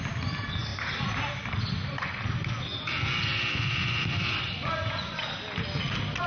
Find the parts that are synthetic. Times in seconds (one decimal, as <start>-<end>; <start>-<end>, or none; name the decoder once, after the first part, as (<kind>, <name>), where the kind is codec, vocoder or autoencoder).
none

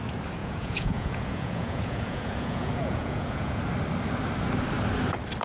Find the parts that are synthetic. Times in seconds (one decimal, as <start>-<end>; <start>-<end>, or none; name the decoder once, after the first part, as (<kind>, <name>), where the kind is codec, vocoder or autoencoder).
0.4-3.6 (vocoder, Vocos)

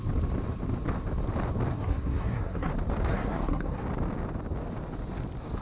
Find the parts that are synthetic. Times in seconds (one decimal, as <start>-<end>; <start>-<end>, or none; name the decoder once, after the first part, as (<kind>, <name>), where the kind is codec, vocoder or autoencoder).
1.7-2.7 (codec, SNAC); 3.1-3.8

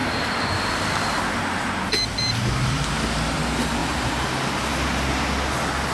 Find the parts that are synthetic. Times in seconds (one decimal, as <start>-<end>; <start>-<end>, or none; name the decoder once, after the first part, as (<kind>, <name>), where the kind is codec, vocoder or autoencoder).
0.0-1.0 (vocoder, BigVGAN v2); 2.1-2.7; 3.8-5.2

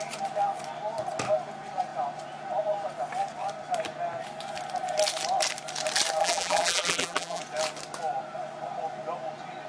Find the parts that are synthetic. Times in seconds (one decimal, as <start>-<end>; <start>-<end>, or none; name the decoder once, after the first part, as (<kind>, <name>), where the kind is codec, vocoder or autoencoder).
6.2-7.4 (vocoder, BigVGAN v2)

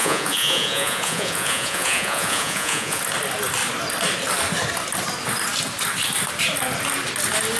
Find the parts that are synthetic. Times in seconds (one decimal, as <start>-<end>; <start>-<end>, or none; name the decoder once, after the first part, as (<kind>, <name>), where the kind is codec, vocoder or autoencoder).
0.0-3.0 (vocoder, Vocos)

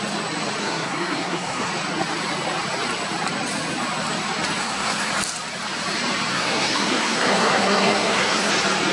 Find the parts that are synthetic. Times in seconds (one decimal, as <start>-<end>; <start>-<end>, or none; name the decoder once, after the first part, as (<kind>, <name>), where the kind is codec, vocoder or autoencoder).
0.6-1.7 (codec, SNAC); 4.6-5.1; 6.3-8.5

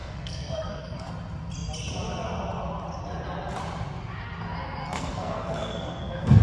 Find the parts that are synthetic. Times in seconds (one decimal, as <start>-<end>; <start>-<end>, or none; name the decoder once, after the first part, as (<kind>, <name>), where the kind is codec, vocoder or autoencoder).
0.0-1.1 (codec, SNAC); 4.8-6.4